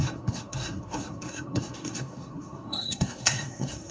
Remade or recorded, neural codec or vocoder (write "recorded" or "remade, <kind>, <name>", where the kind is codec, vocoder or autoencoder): remade, codec, SNAC